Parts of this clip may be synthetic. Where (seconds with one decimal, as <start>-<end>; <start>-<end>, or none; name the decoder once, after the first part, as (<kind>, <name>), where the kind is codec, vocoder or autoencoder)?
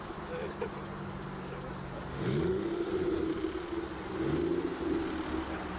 2.1-2.9 (autoencoder, DAC-VAE)